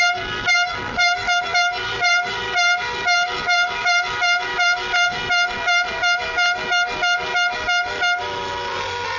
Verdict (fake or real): real